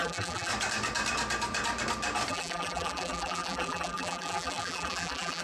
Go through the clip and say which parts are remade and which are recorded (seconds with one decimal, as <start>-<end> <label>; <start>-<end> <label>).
0.0-0.5 remade; 0.5-2.3 recorded; 2.3-5.4 remade